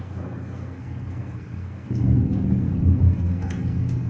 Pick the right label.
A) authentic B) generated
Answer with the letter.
B